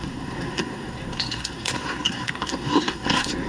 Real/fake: fake